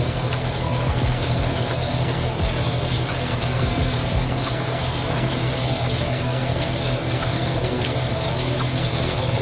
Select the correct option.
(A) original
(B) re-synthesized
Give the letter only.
B